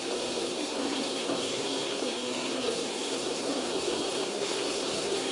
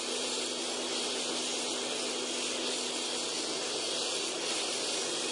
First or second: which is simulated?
first